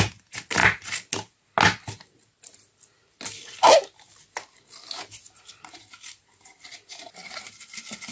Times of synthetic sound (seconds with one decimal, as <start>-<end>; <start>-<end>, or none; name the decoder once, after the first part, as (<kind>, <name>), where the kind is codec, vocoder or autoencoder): none